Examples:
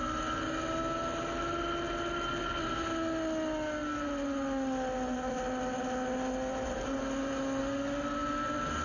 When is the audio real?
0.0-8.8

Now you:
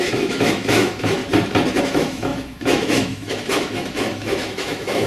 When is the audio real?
1.2-1.8

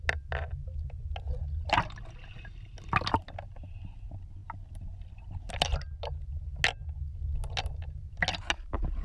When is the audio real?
0.0-9.0